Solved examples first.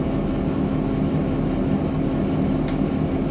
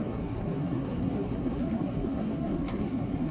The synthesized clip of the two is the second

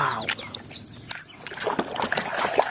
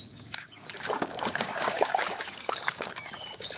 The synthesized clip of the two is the second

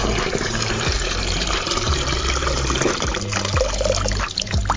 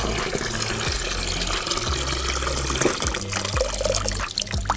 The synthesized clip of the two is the first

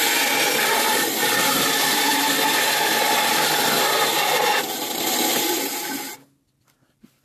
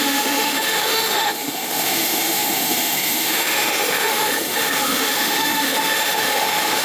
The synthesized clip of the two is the second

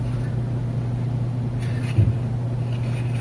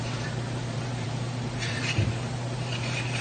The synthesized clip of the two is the second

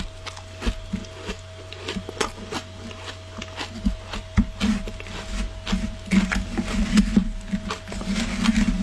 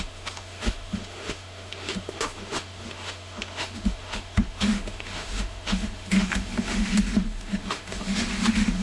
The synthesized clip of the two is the second